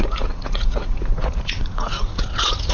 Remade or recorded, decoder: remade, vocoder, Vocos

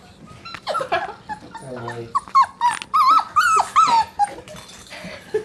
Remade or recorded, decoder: recorded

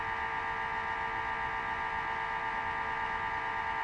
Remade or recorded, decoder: recorded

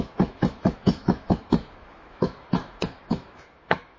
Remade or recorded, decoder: remade, autoencoder, DAC-VAE